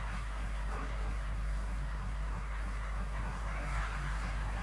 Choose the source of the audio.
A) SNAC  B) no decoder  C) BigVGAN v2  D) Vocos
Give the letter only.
A